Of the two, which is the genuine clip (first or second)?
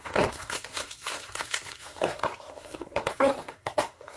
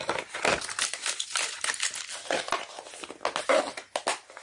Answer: second